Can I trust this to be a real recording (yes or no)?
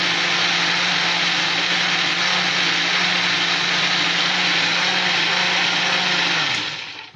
yes